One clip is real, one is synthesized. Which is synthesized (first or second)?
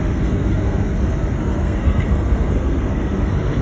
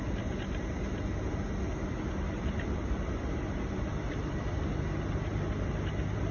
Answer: first